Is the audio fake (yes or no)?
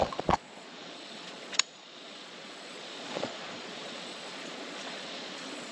yes